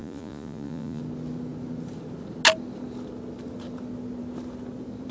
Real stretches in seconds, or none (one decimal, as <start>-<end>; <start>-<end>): 1.0-5.1